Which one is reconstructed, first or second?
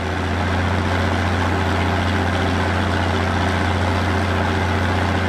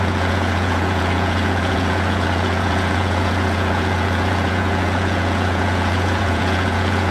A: second